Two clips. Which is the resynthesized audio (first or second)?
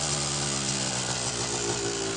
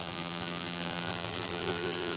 second